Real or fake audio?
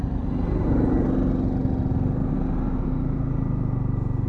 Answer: real